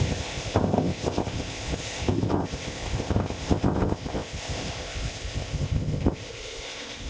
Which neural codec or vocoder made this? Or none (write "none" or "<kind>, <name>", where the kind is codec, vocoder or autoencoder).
codec, ZipCodec